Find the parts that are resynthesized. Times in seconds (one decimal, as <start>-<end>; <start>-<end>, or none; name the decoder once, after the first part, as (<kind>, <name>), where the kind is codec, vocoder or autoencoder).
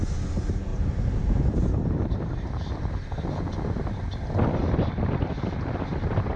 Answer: 0.7-2.8 (vocoder, BigVGAN v2)